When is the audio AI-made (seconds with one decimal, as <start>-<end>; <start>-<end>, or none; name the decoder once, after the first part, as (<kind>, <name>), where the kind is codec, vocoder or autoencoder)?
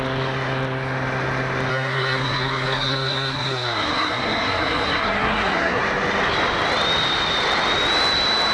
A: 1.7-5.8 (codec, SNAC)